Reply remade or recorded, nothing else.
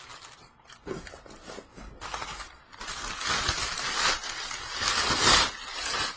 recorded